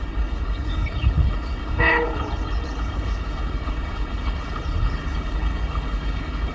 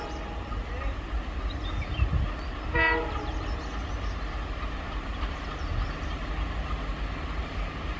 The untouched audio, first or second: second